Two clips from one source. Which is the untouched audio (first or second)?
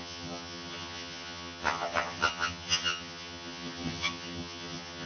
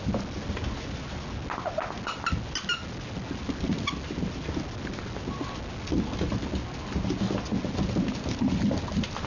second